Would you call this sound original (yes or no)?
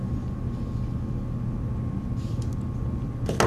yes